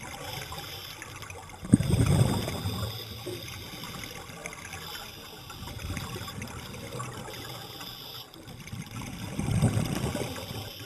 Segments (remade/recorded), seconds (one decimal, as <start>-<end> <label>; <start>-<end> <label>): 0.0-10.8 recorded